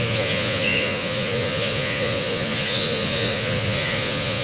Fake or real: fake